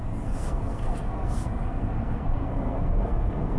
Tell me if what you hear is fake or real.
fake